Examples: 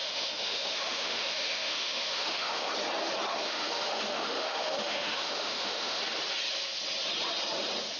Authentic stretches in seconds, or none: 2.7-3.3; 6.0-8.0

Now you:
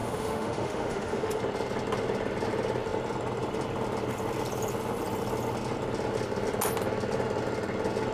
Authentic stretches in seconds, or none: 1.4-8.1

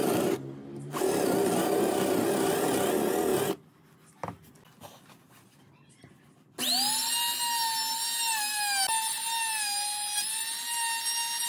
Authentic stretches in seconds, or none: 0.0-11.5

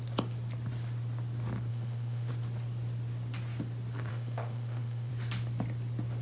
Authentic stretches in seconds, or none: 0.0-1.7; 2.3-4.1; 5.1-6.2

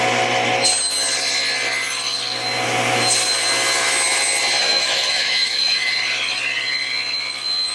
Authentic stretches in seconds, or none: 0.0-4.6; 5.9-7.7

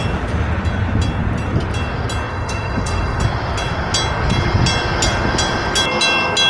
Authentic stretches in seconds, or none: 0.0-2.3; 3.2-6.5

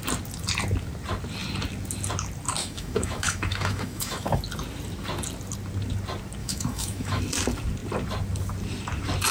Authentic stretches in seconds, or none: 0.0-2.6; 4.4-6.4; 7.2-9.3